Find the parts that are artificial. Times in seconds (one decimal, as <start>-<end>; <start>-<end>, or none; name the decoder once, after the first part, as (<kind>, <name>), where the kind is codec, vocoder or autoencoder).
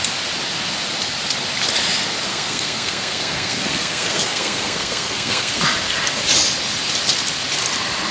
2.3-5.6 (codec, SNAC)